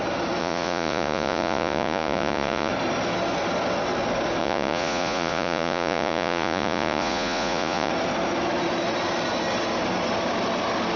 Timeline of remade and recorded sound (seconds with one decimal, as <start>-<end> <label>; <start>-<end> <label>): 0.0-0.4 recorded; 0.4-2.7 remade; 2.7-4.4 recorded; 4.4-7.9 remade; 7.9-11.0 recorded